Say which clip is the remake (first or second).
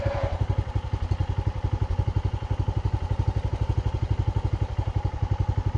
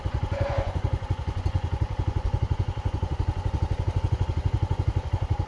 second